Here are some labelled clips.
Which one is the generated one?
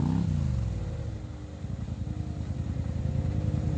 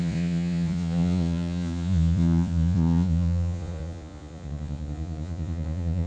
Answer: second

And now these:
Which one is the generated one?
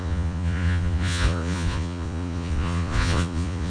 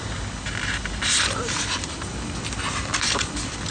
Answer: first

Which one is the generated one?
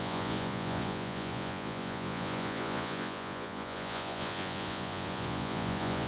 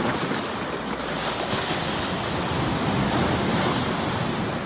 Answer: first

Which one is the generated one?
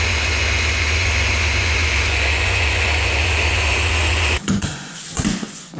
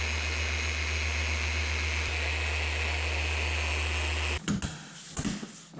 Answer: first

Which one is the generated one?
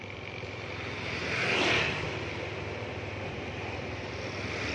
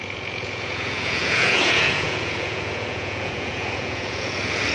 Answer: second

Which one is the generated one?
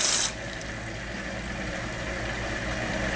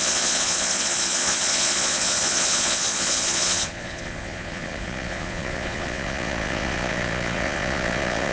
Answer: second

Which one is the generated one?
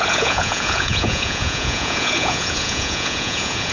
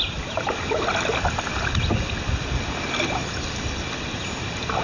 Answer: first